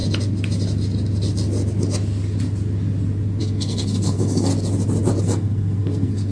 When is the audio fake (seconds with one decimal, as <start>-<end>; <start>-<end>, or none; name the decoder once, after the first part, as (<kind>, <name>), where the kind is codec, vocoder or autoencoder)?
3.4-4.5 (codec, SNAC); 5.2-6.3